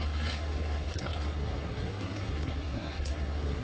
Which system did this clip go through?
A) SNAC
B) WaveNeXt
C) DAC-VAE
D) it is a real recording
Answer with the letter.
A